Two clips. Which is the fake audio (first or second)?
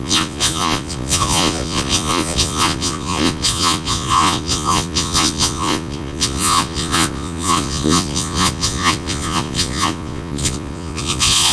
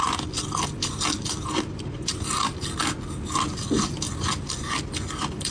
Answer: first